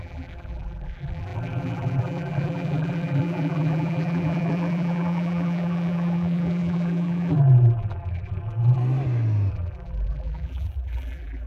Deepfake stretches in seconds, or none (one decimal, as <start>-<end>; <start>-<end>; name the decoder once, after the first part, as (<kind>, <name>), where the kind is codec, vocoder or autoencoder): 0.0-8.8 (vocoder, BigVGAN v2); 9.5-11.5

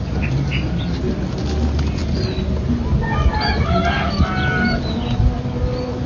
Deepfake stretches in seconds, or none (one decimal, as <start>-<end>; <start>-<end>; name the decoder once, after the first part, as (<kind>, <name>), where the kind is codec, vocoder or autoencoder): none

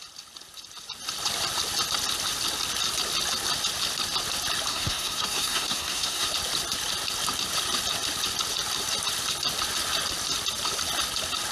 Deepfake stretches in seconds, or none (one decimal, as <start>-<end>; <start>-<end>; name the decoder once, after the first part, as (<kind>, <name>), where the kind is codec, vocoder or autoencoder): 4.7-6.3 (codec, SNAC)

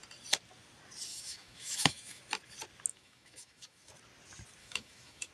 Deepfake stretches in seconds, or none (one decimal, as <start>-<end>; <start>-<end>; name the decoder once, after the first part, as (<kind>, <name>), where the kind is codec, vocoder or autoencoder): 1.1-2.2 (autoencoder, DAC-VAE); 2.9-3.9; 4.6-5.3

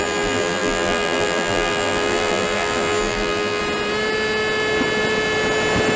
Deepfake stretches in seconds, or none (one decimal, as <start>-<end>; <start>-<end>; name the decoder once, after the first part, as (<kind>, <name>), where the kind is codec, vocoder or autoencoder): 0.0-3.6 (vocoder, BigVGAN v2)

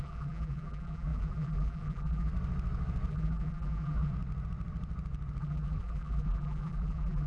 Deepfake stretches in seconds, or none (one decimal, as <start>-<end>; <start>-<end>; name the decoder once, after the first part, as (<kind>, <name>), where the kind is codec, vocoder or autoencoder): 0.0-2.3 (vocoder, BigVGAN v2); 3.1-4.1; 5.4-7.3

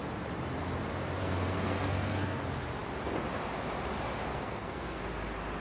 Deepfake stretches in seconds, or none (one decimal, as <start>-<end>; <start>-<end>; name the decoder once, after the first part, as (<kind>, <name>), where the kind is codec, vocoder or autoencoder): 1.2-2.4 (codec, SNAC); 4.3-5.0

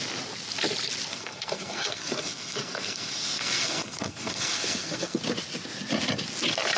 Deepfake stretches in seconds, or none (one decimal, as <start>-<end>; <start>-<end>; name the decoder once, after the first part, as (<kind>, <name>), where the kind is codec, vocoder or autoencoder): 1.1-5.2 (codec, SNAC)